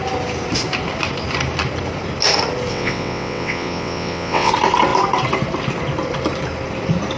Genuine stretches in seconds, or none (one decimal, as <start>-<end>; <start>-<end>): 0.0-2.7; 4.5-7.2